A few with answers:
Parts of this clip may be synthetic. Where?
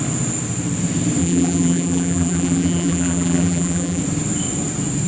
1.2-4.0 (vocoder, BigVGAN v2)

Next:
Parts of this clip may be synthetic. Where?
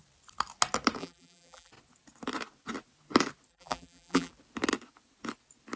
1.0-1.7 (vocoder, BigVGAN v2); 3.5-4.3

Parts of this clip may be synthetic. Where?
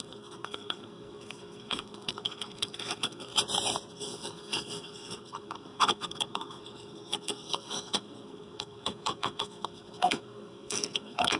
0.0-3.3 (codec, SNAC); 3.9-11.4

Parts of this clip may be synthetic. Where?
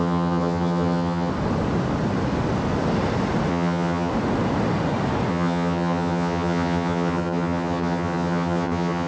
0.0-1.3 (vocoder, HiFi-GAN); 3.5-4.1; 5.3-9.1